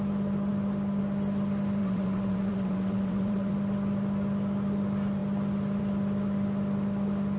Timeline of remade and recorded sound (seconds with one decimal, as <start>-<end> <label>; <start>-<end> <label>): 0.0-1.8 recorded; 1.8-3.5 remade; 3.5-7.4 recorded